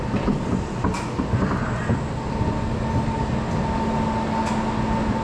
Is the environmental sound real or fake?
real